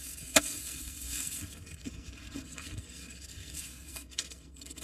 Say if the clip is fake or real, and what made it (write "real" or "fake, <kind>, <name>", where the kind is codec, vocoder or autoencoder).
fake, codec, SNAC